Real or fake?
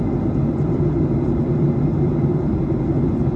real